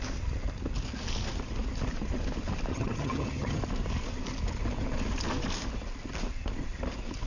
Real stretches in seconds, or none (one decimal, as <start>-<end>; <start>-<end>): 0.0-2.7; 3.6-7.3